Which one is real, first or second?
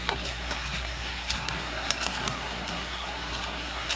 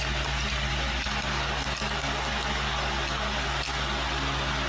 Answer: second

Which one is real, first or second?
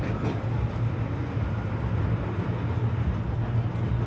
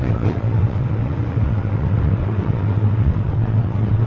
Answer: first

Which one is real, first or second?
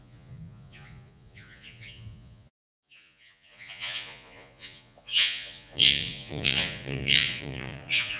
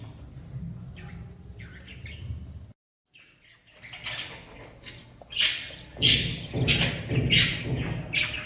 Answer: second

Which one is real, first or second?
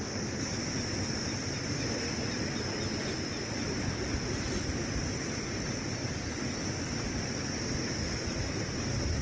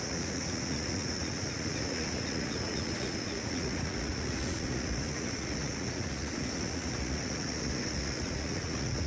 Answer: first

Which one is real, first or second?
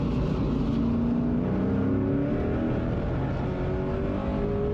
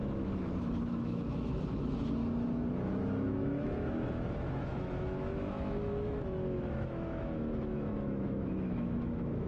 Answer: first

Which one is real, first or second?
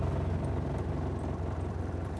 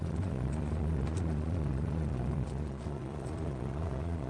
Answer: first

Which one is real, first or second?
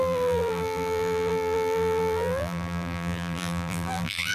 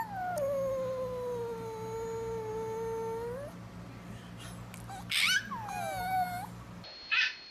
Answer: second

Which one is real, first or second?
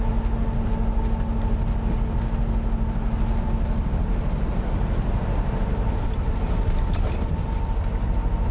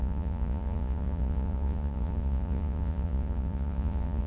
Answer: first